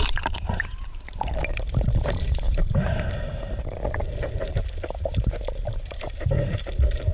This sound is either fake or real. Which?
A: fake